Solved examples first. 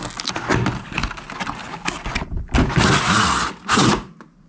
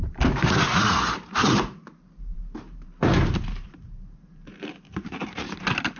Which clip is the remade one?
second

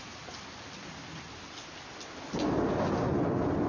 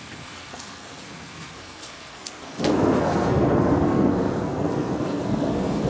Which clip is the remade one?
second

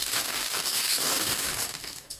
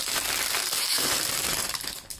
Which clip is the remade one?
first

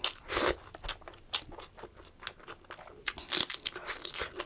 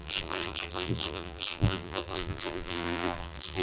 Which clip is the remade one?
second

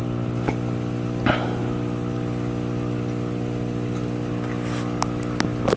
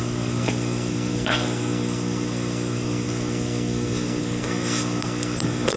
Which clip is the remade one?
second